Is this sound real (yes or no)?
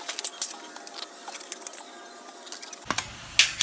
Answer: yes